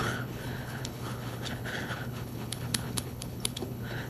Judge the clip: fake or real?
fake